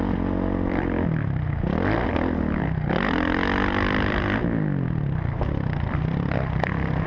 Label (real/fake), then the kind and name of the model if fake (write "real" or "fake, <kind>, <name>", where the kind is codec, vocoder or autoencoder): real